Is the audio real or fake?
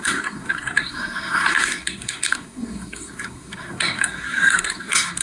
fake